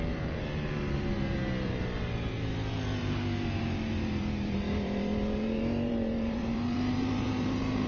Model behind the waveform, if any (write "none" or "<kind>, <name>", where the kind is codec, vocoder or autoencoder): vocoder, BigVGAN v2